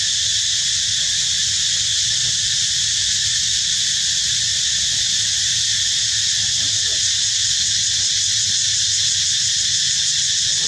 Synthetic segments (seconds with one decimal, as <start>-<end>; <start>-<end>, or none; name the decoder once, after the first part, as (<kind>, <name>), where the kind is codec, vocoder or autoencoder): none